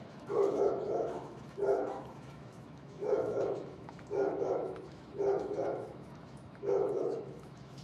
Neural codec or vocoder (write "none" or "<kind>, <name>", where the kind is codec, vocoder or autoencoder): autoencoder, DAC-VAE